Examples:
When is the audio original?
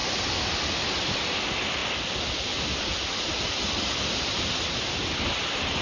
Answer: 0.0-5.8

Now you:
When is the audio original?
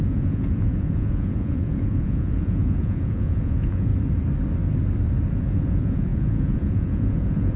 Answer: 3.9-5.3